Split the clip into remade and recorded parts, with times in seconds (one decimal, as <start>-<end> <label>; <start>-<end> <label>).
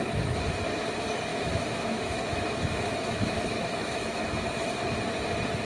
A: 0.0-1.3 recorded; 1.3-4.7 remade; 4.7-5.6 recorded